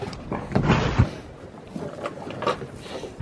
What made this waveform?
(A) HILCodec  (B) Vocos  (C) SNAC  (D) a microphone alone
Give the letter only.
D